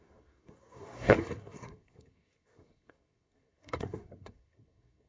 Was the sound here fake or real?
fake